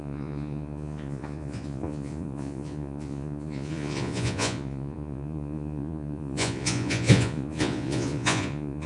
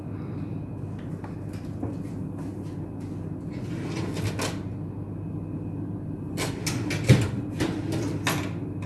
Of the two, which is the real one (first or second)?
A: second